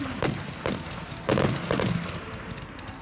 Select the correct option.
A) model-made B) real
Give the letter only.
B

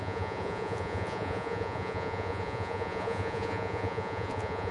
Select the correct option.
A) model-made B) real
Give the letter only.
A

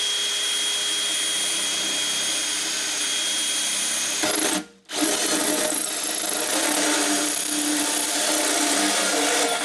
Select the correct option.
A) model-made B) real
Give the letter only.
B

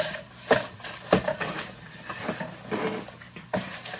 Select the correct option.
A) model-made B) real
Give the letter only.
B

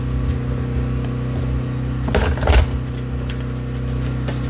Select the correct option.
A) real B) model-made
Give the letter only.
A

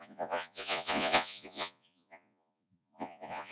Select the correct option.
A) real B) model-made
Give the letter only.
B